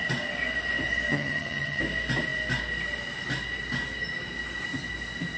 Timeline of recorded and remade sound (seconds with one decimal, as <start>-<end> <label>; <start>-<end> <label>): 0.0-1.1 recorded; 1.1-1.8 remade; 1.8-5.4 recorded